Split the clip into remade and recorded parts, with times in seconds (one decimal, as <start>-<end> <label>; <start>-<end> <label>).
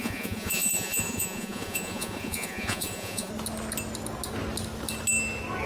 0.0-3.3 remade; 3.3-5.7 recorded